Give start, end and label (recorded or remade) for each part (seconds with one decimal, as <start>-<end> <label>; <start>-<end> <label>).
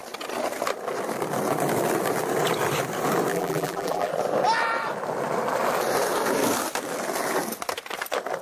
0.0-3.3 recorded; 3.3-4.1 remade; 4.1-8.4 recorded